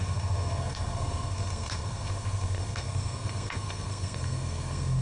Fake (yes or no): yes